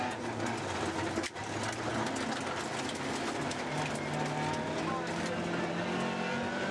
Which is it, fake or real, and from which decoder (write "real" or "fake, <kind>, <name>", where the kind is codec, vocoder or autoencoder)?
real